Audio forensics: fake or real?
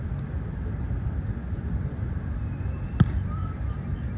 real